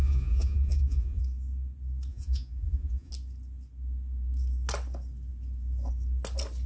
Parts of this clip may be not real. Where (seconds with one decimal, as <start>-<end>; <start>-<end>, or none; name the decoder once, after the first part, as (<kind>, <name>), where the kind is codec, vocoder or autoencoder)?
0.0-1.2 (vocoder, Vocos); 2.1-3.1